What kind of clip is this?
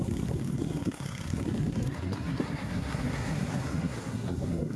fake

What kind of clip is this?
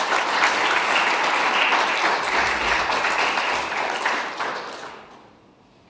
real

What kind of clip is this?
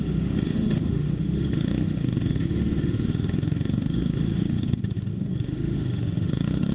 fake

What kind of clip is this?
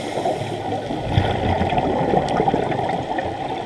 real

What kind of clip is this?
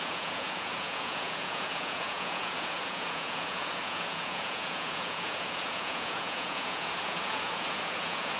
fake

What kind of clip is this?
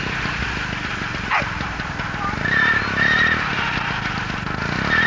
real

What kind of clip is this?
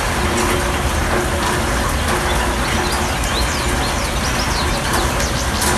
real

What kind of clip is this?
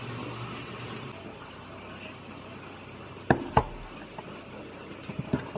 real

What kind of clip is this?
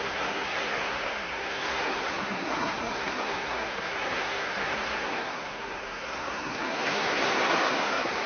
fake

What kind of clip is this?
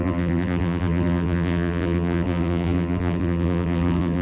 fake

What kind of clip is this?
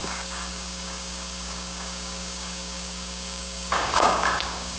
fake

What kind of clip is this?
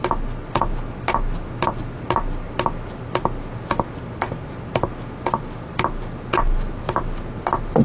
real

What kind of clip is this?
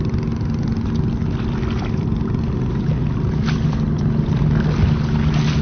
real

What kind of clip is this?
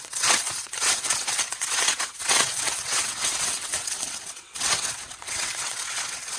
fake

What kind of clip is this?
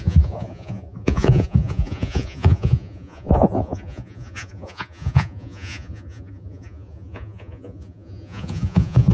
fake